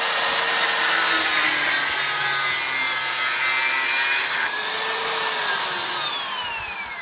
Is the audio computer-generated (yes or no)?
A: no